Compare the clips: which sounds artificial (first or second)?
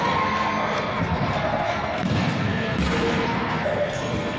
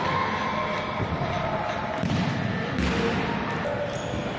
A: first